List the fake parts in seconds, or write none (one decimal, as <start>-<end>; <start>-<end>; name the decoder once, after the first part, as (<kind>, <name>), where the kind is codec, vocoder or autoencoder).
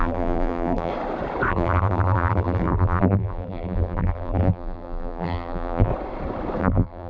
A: 0.0-0.9 (vocoder, BigVGAN v2); 1.5-5.9; 6.6-7.1